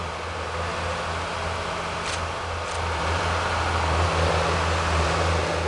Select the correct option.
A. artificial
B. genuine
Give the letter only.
B